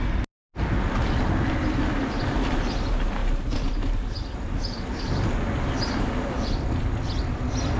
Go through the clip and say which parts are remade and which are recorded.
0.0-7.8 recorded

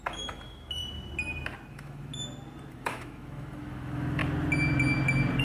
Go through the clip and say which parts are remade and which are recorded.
0.0-0.8 remade; 0.8-1.7 recorded; 1.7-2.1 remade; 2.1-2.7 recorded; 2.7-4.2 remade; 4.2-5.4 recorded

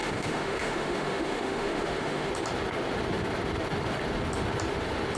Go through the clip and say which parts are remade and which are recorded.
0.0-2.3 remade; 2.3-5.2 recorded

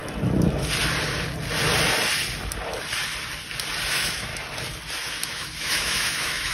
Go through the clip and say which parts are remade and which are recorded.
0.0-3.9 recorded; 3.9-4.3 remade; 4.3-5.1 recorded; 5.1-6.5 remade

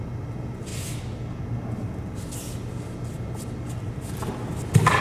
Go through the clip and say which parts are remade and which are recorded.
0.0-5.0 recorded

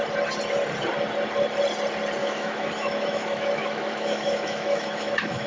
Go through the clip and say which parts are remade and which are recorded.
0.0-2.2 recorded; 2.2-5.5 remade

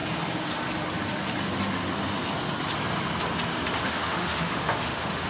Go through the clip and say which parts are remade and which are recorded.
0.0-3.8 recorded; 3.8-5.3 remade